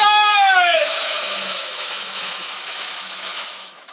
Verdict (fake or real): fake